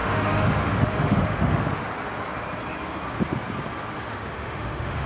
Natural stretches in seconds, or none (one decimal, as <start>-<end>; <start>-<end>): 1.8-4.1